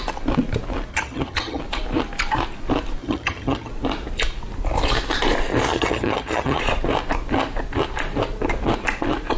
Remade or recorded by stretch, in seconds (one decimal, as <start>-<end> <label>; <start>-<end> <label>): 0.0-0.9 recorded; 0.9-1.6 remade; 1.6-3.0 recorded; 3.0-3.7 remade; 3.7-5.7 recorded; 5.7-6.6 remade; 6.6-9.4 recorded